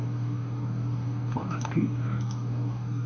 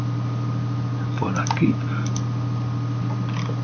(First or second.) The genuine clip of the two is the second